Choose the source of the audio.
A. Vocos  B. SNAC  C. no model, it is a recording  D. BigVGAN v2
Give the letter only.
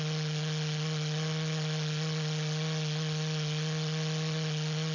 C